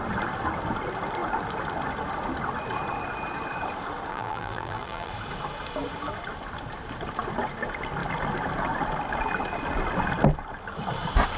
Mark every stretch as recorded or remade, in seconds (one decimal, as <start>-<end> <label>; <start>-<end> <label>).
0.0-4.1 recorded; 4.1-5.1 remade; 5.1-11.4 recorded